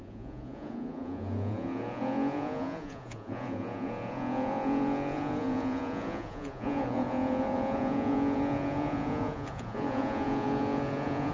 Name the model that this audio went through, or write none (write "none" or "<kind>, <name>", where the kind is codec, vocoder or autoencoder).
vocoder, Vocos